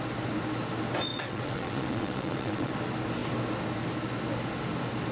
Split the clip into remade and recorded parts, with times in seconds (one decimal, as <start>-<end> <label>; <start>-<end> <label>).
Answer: 0.0-1.1 recorded; 1.1-2.7 remade; 2.7-5.1 recorded